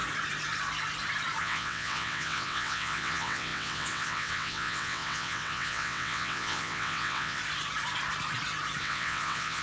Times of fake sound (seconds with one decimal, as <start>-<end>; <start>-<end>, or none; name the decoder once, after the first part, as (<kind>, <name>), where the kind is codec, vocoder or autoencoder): 1.4-7.4 (vocoder, WaveNeXt); 8.8-9.6